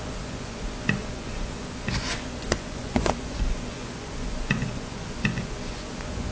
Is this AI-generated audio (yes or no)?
yes